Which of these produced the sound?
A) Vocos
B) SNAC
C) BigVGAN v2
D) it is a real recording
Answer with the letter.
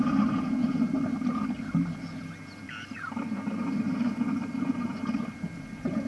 D